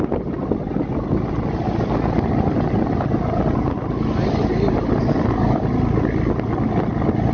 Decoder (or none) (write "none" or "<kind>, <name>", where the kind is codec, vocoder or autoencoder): none